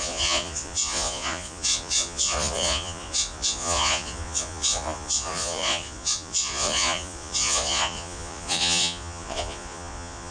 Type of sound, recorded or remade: remade